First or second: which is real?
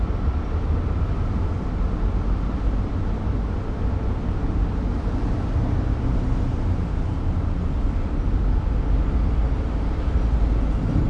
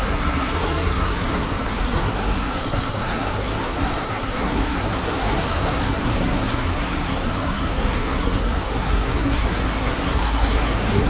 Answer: first